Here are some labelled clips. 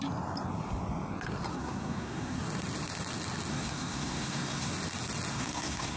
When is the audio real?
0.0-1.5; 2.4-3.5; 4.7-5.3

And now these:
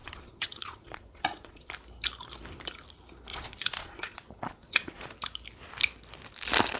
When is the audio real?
1.7-3.3; 5.1-6.8

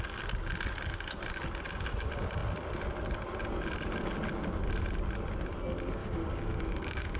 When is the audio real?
0.0-6.0

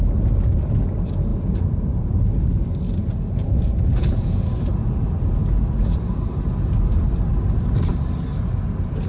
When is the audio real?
0.0-1.3; 2.2-3.4; 4.5-9.1

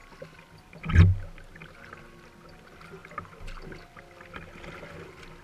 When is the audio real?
0.0-5.4

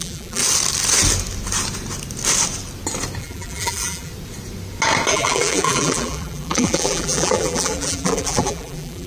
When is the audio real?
0.4-3.2; 4.1-5.1